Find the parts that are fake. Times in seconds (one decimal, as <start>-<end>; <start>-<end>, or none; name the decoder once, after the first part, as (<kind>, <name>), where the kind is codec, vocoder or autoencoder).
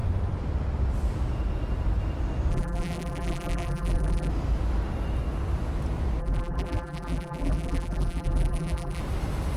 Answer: 2.5-4.3 (vocoder, BigVGAN v2); 6.2-9.0